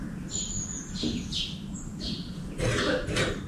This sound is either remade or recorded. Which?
recorded